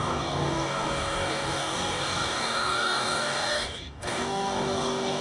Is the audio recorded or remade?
remade